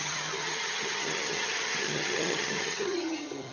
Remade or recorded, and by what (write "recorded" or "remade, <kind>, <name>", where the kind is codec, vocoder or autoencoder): remade, vocoder, HiFi-GAN